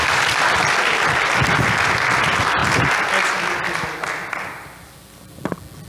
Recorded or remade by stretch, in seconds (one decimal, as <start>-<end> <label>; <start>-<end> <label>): 0.0-4.2 recorded; 4.2-5.4 remade; 5.4-5.9 recorded